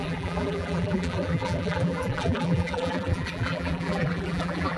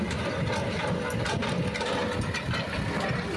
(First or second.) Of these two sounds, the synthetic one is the first